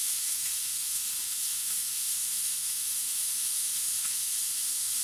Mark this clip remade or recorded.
remade